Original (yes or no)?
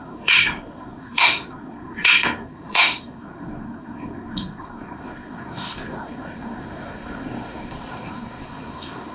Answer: no